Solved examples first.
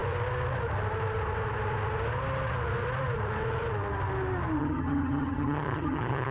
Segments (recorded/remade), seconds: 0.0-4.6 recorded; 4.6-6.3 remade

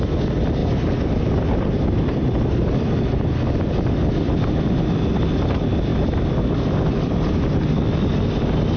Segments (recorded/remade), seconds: 0.0-0.6 recorded; 0.6-4.6 remade; 4.6-5.9 recorded; 5.9-7.7 remade; 7.7-8.8 recorded

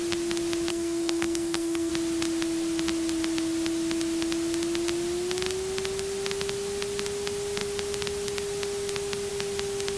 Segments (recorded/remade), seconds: 0.0-0.7 recorded; 0.7-1.9 remade; 1.9-10.0 recorded